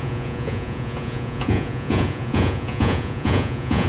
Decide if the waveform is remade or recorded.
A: remade